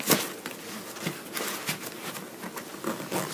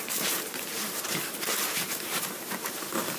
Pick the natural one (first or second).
first